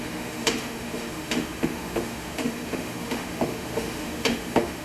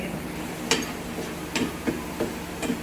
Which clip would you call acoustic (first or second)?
second